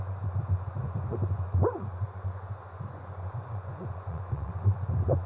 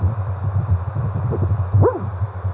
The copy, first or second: first